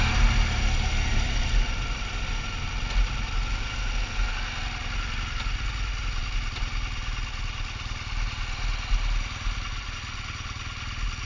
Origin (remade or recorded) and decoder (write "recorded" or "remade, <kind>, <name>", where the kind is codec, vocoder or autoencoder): recorded